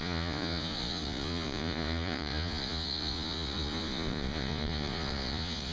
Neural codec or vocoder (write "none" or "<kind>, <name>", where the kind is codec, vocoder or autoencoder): vocoder, Vocos